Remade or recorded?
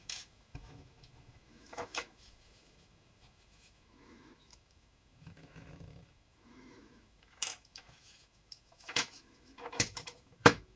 remade